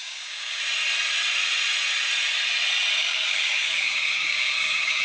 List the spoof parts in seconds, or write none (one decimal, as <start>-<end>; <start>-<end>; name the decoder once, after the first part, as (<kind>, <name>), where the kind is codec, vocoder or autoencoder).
0.0-0.6 (codec, DAC); 3.0-5.0

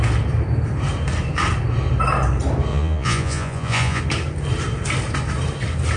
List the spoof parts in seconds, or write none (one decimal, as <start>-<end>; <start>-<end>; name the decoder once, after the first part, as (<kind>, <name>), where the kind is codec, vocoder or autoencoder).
2.7-4.0 (vocoder, Vocos)